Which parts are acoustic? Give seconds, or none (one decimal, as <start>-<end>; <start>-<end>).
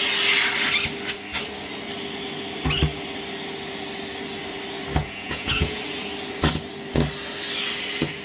0.0-5.0; 5.8-8.2